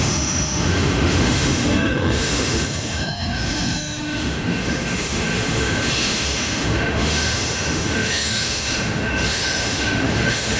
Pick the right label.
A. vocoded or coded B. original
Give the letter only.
A